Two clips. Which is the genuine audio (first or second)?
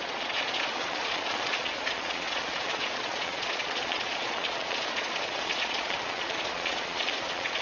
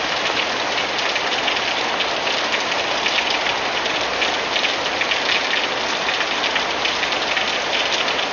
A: second